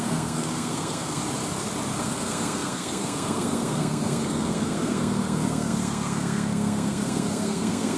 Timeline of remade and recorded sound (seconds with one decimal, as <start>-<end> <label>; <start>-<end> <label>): 0.0-1.2 remade; 1.2-2.0 recorded; 2.0-8.0 remade